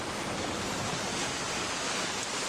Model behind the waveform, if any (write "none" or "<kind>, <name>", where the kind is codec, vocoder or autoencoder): vocoder, BigVGAN v2